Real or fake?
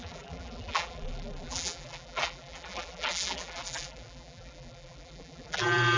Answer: fake